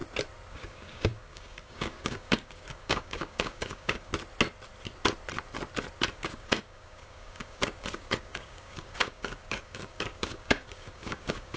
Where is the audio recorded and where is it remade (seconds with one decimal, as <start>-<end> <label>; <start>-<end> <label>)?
0.0-0.5 recorded; 0.5-4.1 remade; 4.1-6.1 recorded; 6.1-11.6 remade